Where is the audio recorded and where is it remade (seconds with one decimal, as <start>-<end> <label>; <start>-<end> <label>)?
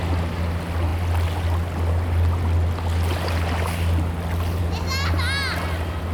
0.0-6.1 recorded